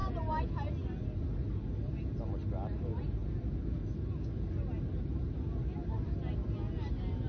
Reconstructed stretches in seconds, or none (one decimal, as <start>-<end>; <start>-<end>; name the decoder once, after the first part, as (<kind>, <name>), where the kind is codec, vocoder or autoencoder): 5.8-6.3 (vocoder, BigVGAN v2)